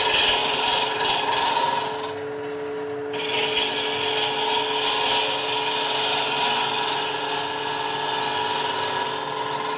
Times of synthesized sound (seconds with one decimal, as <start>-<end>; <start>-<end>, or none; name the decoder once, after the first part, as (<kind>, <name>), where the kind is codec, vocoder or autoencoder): 0.4-1.6 (vocoder, BigVGAN v2)